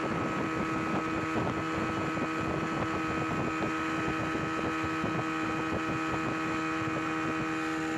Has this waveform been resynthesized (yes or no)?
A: no